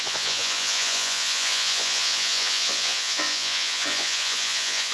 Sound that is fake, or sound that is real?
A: fake